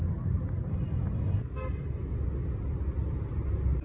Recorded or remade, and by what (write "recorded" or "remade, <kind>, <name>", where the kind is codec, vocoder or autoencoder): recorded